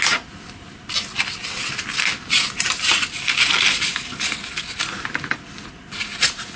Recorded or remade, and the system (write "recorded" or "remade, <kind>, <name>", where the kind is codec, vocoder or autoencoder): recorded